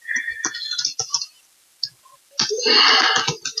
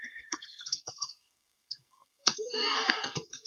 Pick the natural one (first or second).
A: first